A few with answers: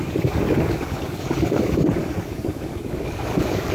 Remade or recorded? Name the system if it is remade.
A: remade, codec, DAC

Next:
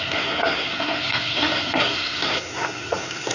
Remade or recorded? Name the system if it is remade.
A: remade, codec, SNAC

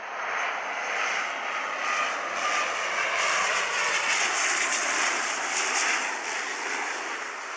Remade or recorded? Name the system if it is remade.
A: recorded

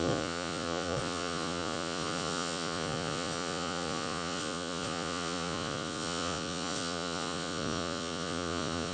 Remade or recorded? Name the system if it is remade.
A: remade, vocoder, Vocos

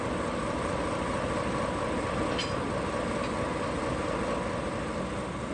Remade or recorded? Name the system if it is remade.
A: recorded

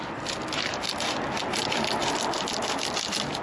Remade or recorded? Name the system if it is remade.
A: recorded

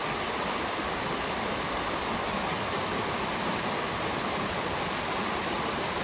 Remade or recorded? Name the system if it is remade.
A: recorded